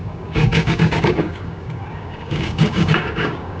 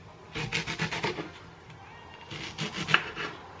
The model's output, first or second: first